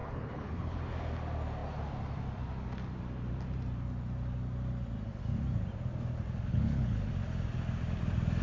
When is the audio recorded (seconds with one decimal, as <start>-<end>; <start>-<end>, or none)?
0.8-6.5; 7.1-8.4